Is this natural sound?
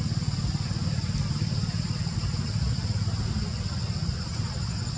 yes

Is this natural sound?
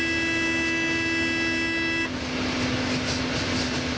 yes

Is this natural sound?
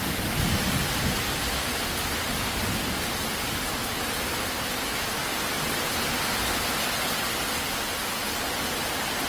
yes